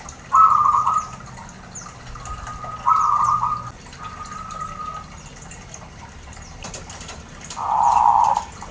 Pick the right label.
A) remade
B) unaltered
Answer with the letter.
B